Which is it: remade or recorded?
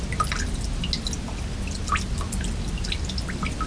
recorded